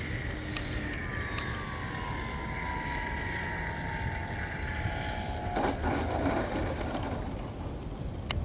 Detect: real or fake real